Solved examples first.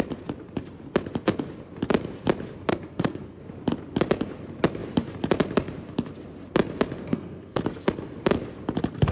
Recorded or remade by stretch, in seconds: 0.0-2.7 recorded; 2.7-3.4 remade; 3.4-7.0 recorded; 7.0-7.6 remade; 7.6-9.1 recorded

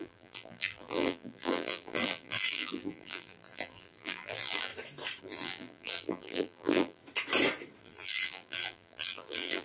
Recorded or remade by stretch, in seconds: 0.0-4.7 remade; 4.7-5.2 recorded; 5.2-7.0 remade; 7.0-7.8 recorded; 7.8-9.6 remade

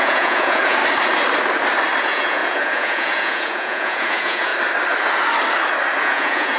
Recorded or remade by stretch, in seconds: 0.0-0.8 remade; 0.8-2.0 recorded; 2.0-4.5 remade; 4.5-6.0 recorded; 6.0-6.6 remade

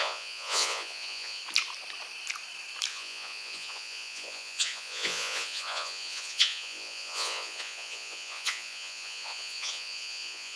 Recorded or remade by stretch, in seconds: 0.0-1.4 remade; 1.4-2.9 recorded; 2.9-10.6 remade